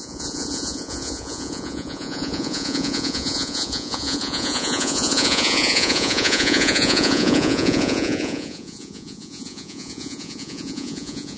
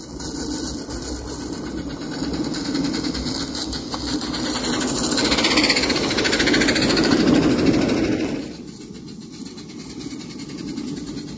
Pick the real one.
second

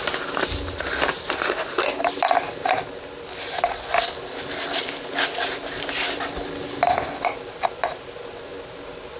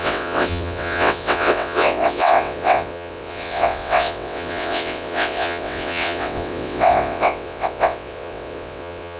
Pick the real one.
first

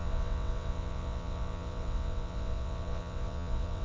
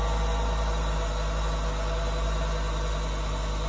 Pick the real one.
second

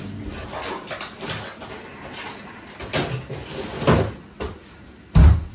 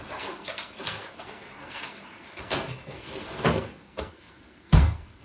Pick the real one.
first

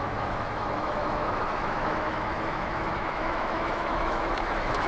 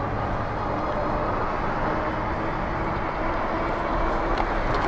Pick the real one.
second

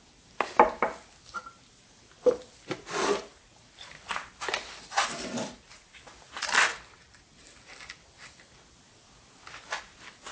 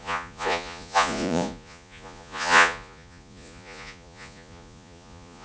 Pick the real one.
first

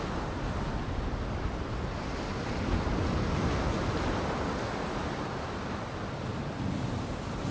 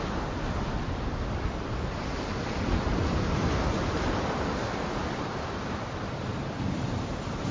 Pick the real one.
first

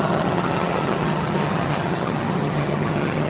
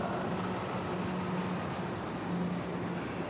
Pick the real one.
second